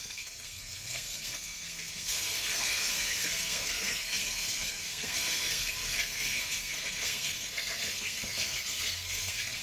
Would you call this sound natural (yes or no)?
no